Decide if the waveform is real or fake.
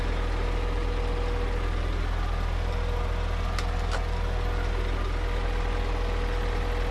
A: real